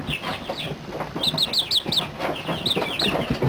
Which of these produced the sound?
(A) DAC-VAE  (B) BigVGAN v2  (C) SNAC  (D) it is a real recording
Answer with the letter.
D